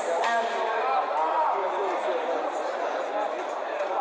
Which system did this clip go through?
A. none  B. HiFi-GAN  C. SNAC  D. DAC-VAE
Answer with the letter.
A